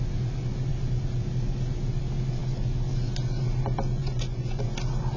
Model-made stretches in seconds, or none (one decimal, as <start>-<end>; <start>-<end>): 4.0-4.6